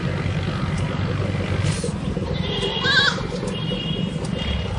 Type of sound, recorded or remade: recorded